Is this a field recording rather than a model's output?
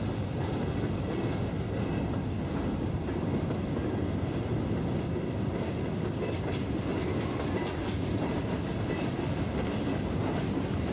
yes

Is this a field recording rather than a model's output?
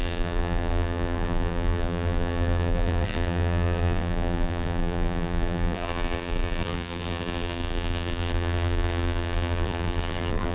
no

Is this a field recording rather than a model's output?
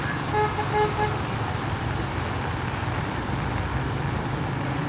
yes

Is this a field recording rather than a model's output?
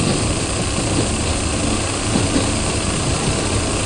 no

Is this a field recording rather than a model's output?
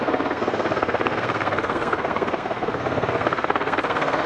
no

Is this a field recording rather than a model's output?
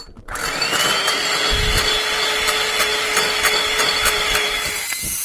yes